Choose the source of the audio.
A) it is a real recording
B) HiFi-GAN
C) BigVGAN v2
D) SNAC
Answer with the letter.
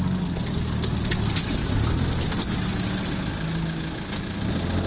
A